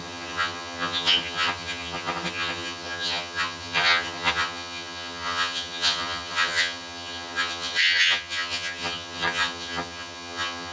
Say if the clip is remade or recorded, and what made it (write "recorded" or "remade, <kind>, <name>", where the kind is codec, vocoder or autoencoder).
remade, vocoder, HiFi-GAN